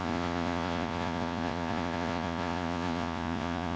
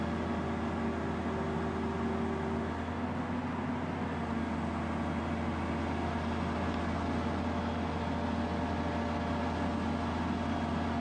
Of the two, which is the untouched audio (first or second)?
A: second